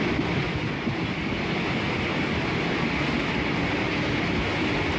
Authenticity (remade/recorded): recorded